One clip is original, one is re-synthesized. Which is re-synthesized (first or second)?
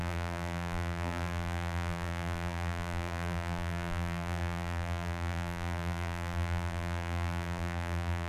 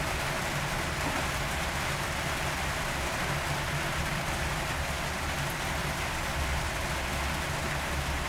first